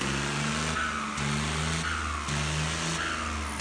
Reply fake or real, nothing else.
real